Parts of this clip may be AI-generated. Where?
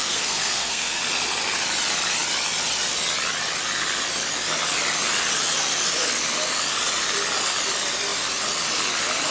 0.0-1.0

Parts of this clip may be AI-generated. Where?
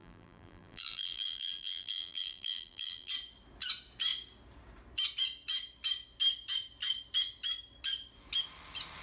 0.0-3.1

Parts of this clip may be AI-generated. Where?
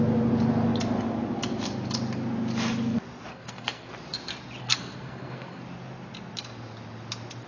3.3-3.9; 4.6-5.6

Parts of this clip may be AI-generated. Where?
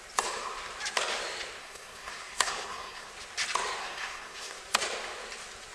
1.6-3.1; 3.8-4.6